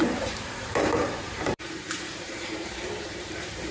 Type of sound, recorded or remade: remade